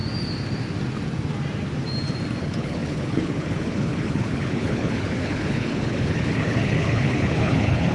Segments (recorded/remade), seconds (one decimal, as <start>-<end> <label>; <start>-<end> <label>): 0.0-2.4 recorded; 2.4-7.9 remade